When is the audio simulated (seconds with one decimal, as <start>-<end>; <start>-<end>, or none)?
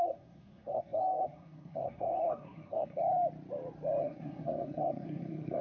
0.0-3.0; 4.0-5.6